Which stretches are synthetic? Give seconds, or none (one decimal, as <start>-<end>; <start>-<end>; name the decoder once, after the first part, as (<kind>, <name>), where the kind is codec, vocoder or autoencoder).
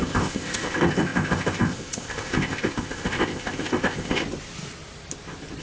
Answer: 0.0-4.2 (codec, ZipCodec)